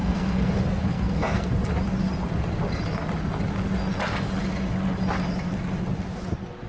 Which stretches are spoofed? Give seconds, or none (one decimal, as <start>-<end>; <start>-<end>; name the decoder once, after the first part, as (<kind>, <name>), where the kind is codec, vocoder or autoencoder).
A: 0.0-0.5 (codec, SNAC); 0.9-1.5